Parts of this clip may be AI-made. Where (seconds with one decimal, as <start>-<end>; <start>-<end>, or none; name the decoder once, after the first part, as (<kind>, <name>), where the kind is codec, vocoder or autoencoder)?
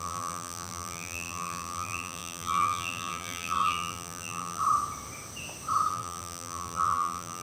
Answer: 0.0-4.6 (vocoder, BigVGAN v2); 5.9-7.4